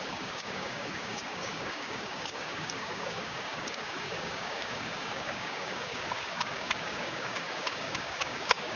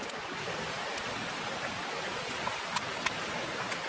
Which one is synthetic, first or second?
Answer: first